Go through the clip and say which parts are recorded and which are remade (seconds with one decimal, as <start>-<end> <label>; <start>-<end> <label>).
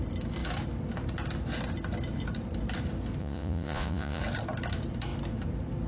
0.0-3.2 recorded; 3.2-4.2 remade; 4.2-5.9 recorded